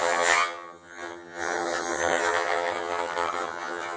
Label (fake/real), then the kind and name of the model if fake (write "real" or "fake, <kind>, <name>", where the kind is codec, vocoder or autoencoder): fake, vocoder, HiFi-GAN